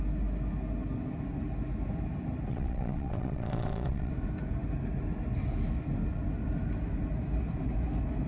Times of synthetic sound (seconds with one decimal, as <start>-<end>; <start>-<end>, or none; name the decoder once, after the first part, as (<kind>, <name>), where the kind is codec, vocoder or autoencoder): 2.5-4.1 (vocoder, WaveNeXt)